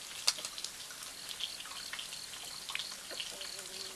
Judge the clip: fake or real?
real